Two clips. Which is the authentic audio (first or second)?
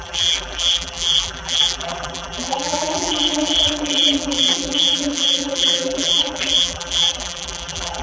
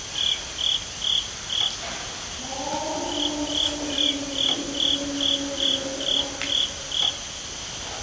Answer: second